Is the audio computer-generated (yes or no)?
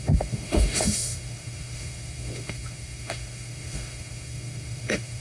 yes